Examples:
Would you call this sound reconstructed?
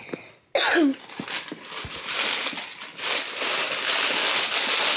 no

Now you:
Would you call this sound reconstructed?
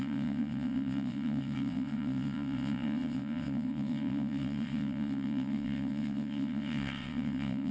yes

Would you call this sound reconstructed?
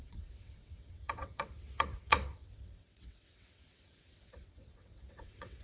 yes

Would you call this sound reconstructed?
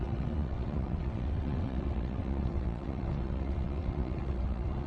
yes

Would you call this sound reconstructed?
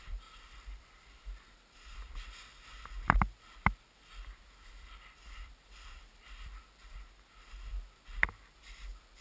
no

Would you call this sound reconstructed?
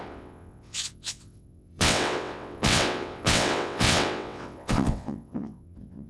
yes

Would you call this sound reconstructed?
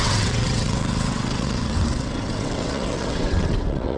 yes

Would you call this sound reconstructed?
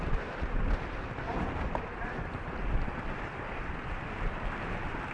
no